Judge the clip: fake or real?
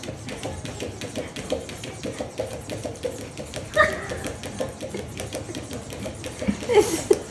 real